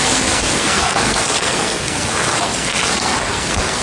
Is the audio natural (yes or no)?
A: no